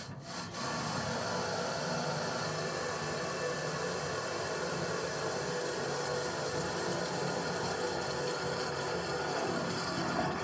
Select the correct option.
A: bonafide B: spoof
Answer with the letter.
A